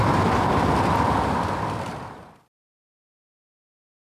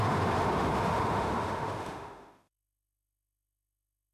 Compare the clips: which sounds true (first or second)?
first